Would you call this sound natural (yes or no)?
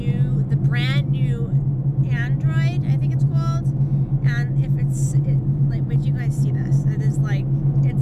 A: yes